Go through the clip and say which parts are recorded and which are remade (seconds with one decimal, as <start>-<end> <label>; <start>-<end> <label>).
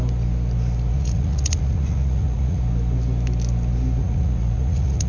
0.0-0.9 recorded; 0.9-2.6 remade; 2.6-4.0 recorded; 4.0-5.1 remade